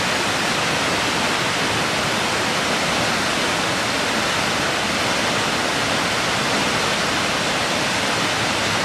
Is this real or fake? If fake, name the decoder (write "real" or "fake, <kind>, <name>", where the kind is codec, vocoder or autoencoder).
real